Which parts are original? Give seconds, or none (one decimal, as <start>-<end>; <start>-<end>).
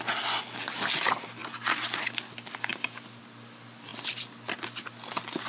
0.0-5.5